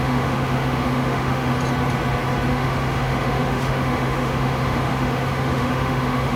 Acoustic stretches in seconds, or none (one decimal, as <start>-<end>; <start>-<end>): 1.5-2.5